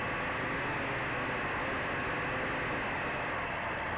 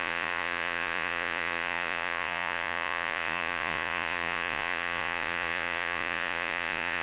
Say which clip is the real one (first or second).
first